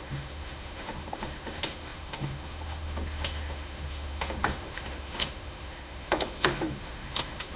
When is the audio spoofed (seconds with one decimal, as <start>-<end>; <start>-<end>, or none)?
0.0-7.6